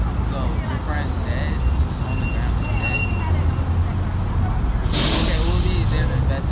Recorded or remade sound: recorded